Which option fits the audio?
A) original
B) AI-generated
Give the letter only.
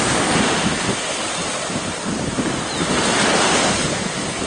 A